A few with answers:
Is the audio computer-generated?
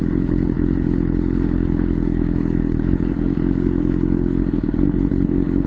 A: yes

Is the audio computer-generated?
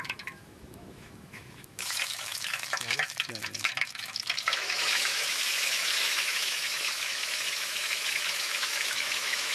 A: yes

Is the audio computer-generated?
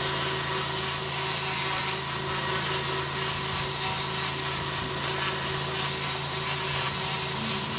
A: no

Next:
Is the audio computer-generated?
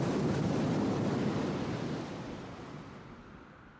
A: no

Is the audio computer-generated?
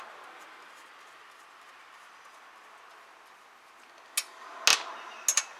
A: no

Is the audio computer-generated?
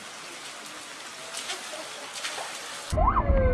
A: no